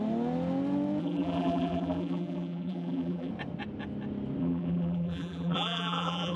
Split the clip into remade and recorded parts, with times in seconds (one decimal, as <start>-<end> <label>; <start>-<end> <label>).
0.0-1.0 recorded; 1.0-3.3 remade; 3.3-4.4 recorded; 4.4-6.4 remade